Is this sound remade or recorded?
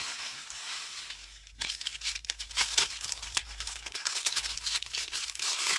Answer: remade